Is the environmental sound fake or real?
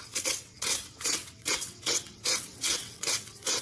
fake